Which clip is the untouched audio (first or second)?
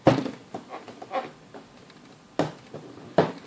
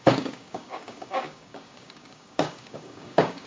first